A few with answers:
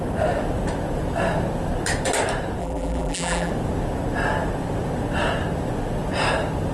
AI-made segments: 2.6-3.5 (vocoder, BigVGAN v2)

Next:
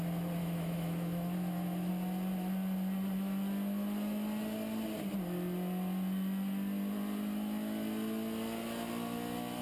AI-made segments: 0.4-1.9 (autoencoder, DAC-VAE)

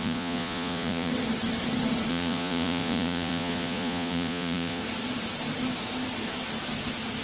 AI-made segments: 0.0-1.1 (vocoder, Vocos); 2.1-4.8

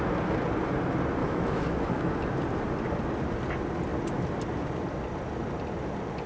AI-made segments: 1.2-2.1 (autoencoder, DAC-VAE)

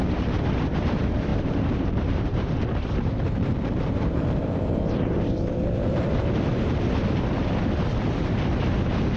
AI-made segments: 1.3-6.5 (vocoder, BigVGAN v2)

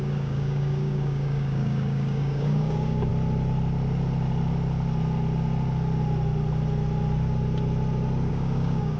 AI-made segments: 0.0-3.1 (codec, DAC); 8.3-9.0